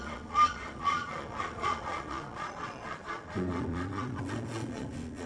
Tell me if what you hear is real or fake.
fake